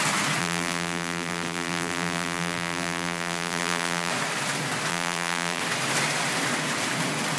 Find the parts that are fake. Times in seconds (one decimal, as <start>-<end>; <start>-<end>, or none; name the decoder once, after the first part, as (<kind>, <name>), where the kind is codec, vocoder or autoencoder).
0.4-4.1 (vocoder, BigVGAN v2); 4.9-5.6